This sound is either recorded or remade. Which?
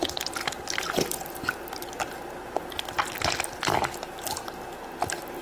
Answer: recorded